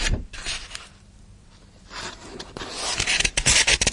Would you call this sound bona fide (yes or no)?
no